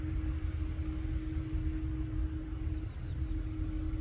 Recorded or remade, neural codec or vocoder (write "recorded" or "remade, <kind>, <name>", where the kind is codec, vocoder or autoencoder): recorded